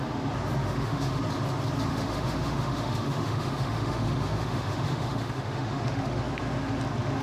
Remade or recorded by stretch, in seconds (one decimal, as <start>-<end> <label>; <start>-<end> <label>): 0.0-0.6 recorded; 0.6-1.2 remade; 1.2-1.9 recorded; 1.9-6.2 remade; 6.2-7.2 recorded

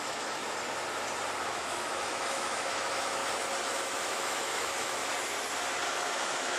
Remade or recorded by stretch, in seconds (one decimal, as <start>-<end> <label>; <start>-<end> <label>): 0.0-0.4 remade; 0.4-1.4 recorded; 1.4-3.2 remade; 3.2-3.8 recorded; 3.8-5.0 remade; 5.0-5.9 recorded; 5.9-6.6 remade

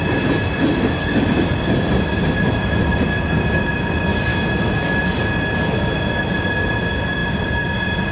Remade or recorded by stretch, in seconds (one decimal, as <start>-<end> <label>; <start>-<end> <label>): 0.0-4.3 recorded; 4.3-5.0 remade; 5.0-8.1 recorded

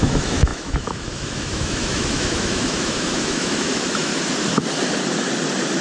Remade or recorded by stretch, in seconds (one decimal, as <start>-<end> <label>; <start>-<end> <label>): 0.0-4.1 remade; 4.1-5.8 recorded

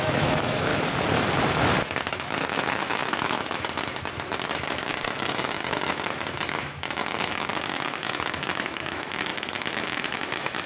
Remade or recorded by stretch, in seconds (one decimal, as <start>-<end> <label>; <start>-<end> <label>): 0.0-0.7 remade; 0.7-2.1 recorded; 2.1-10.7 remade

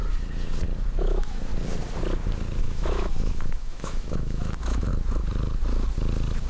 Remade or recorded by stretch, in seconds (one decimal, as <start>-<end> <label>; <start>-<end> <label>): 0.0-1.0 recorded; 1.0-1.5 remade; 1.5-2.6 recorded; 2.6-4.9 remade; 4.9-6.5 recorded

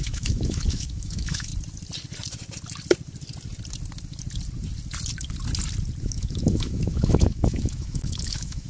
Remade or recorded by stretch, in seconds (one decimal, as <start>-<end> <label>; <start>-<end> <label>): 0.0-1.5 remade; 1.5-6.0 recorded; 6.0-8.7 remade

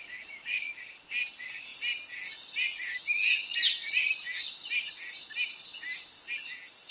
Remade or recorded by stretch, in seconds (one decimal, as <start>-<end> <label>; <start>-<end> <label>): 0.0-0.8 remade; 0.8-6.9 recorded